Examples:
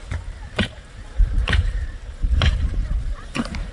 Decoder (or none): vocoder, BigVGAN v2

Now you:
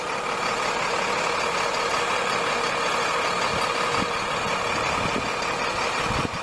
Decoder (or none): none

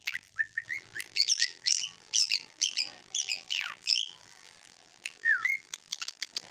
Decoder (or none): vocoder, BigVGAN v2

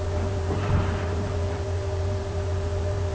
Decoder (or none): vocoder, BigVGAN v2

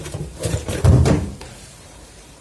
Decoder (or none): vocoder, BigVGAN v2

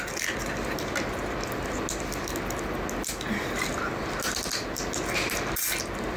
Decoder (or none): none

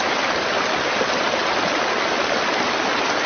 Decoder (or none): none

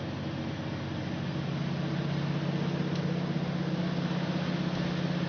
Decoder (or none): none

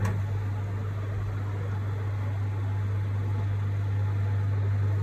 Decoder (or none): none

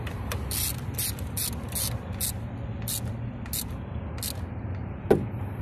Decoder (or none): none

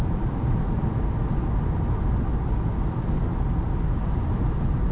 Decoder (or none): vocoder, BigVGAN v2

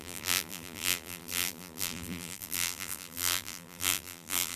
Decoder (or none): vocoder, BigVGAN v2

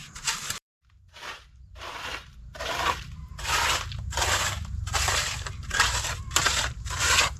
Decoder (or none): vocoder, BigVGAN v2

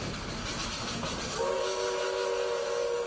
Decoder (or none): none